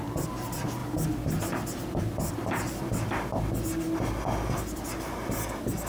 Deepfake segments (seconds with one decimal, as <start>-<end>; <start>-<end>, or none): none